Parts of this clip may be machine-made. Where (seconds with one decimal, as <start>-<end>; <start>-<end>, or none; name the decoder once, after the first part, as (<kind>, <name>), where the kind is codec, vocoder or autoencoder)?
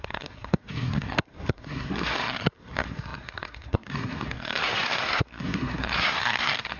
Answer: 0.0-6.8 (codec, SNAC)